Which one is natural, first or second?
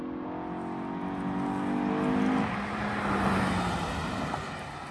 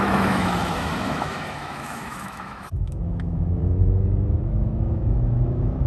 first